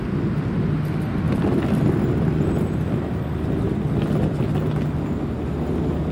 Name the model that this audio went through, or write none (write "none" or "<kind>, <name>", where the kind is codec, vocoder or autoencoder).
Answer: none